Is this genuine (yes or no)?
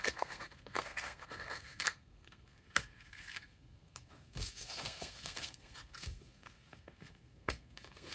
no